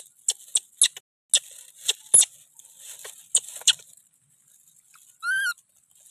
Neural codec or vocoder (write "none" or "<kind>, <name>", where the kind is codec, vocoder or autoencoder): none